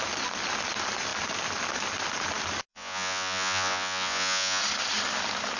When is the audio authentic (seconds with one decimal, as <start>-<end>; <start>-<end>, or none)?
0.0-2.7; 4.6-5.6